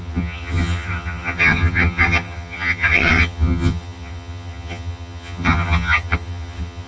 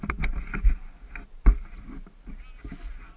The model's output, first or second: first